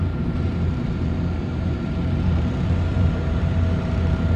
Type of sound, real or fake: fake